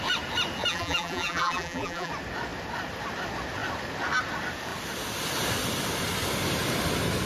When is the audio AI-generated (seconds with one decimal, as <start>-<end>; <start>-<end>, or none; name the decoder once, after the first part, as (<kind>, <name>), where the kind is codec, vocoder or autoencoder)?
0.7-2.1 (vocoder, BigVGAN v2)